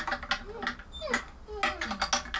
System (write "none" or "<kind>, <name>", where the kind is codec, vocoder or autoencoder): none